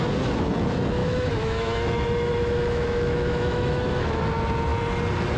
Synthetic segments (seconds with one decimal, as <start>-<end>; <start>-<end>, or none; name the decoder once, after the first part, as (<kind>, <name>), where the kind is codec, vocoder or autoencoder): 1.0-4.2 (autoencoder, DAC-VAE)